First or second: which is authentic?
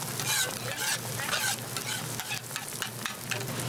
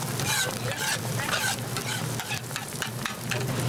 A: first